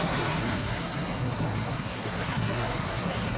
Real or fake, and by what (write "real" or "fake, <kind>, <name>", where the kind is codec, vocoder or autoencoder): fake, codec, SNAC